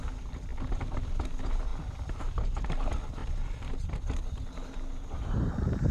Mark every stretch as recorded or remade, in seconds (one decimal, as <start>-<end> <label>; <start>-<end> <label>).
0.0-0.5 recorded; 0.5-1.1 remade; 1.1-1.7 recorded; 1.7-2.7 remade; 2.7-3.2 recorded; 3.2-4.1 remade; 4.1-5.9 recorded